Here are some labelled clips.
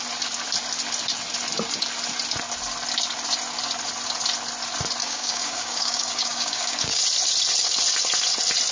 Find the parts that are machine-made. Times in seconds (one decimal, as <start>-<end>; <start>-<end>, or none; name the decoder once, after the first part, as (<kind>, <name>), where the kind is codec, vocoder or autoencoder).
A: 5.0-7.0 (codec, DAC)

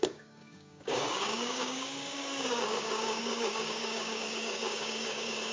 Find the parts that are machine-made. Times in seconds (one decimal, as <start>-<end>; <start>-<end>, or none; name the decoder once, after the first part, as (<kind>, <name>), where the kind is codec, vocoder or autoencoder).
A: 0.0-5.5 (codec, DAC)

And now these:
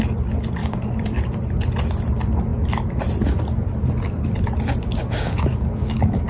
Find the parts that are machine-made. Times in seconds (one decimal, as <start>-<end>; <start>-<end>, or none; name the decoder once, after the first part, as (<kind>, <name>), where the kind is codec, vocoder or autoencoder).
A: 0.6-1.3 (codec, DAC); 5.0-6.3